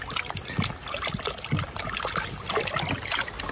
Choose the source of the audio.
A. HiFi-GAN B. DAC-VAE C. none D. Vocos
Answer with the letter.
C